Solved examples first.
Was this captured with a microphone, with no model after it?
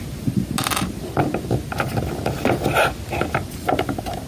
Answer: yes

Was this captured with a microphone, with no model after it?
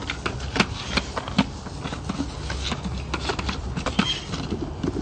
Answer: yes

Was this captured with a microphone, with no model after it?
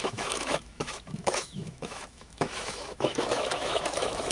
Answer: no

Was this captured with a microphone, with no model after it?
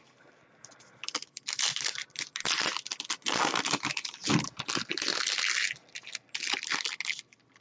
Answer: yes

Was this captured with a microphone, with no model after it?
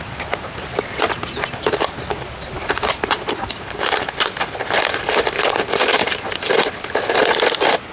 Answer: yes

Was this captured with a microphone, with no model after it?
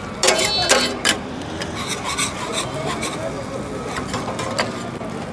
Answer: yes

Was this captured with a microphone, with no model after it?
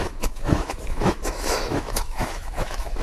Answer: no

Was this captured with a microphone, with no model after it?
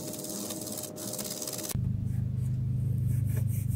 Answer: yes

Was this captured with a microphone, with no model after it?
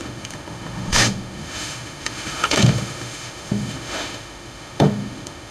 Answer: no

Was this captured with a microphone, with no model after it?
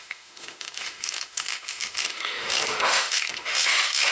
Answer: no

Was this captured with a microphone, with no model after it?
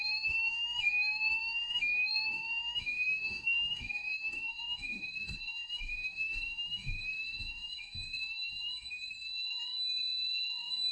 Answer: no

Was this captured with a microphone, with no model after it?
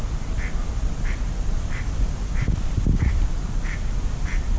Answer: yes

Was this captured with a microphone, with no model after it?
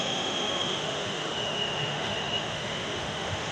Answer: no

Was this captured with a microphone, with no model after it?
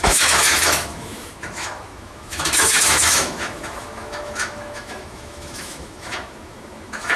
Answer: no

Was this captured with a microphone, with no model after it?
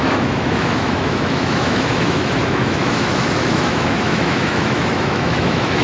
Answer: no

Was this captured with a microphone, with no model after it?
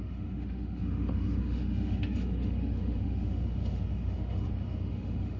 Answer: no